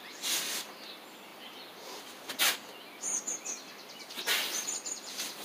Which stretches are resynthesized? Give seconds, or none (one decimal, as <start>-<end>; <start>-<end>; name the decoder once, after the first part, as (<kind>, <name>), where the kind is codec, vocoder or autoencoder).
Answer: none

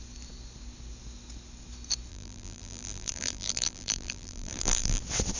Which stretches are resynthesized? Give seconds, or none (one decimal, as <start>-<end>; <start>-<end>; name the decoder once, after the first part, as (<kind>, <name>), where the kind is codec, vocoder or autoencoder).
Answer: 2.1-5.0 (vocoder, BigVGAN v2)

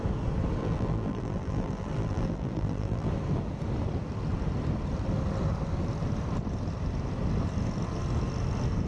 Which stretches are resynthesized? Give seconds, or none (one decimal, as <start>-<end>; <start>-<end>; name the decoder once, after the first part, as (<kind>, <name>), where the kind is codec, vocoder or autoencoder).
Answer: 0.6-3.1 (vocoder, BigVGAN v2)

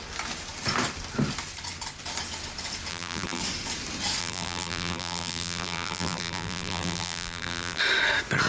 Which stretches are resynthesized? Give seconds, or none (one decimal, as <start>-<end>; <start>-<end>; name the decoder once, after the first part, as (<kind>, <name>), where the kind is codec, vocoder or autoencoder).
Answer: 2.9-3.4 (vocoder, BigVGAN v2); 4.2-7.8

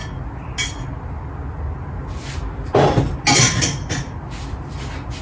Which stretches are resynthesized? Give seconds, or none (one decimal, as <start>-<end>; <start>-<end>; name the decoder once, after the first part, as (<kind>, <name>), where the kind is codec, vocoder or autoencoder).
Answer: none

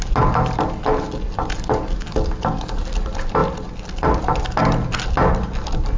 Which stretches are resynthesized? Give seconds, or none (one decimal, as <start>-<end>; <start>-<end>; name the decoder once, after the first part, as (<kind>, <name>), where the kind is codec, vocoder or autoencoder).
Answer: none